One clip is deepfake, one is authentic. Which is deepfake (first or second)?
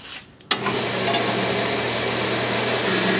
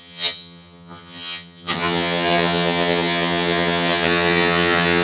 second